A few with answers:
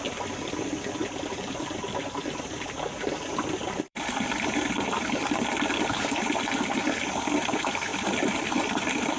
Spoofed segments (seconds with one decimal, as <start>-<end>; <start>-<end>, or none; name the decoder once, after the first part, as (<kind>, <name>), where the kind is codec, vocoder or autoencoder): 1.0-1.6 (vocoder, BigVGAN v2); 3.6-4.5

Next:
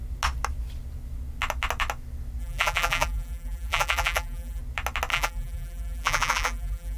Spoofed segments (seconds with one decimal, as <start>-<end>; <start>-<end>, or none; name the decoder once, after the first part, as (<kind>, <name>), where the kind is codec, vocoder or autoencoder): 2.4-4.6 (vocoder, BigVGAN v2); 5.1-7.0

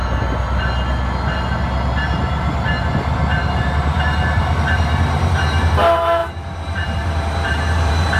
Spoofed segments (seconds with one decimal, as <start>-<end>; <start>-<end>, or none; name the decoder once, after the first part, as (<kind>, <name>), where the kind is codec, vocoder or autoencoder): 3.4-4.0 (vocoder, BigVGAN v2); 6.2-8.2

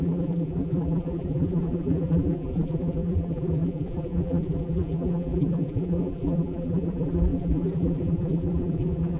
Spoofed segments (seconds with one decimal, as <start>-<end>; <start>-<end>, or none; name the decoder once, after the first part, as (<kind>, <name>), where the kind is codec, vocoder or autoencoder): 0.0-9.2 (vocoder, BigVGAN v2)

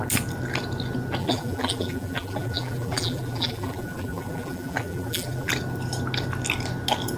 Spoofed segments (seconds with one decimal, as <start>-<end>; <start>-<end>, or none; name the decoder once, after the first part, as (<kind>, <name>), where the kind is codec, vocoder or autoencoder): 1.2-5.5 (vocoder, BigVGAN v2)

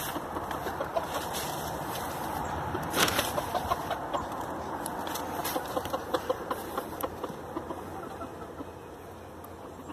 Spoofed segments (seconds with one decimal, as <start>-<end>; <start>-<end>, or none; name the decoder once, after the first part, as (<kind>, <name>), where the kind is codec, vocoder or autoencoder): 0.9-3.7 (vocoder, BigVGAN v2); 5.4-8.0

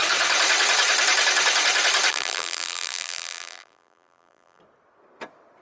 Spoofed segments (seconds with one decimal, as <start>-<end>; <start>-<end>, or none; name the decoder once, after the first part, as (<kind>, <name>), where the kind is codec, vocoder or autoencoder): 2.1-4.6 (vocoder, BigVGAN v2)